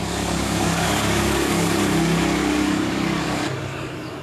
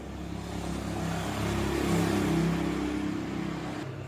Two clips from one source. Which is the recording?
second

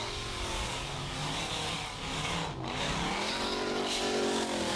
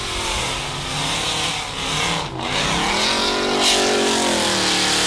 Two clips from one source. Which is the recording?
second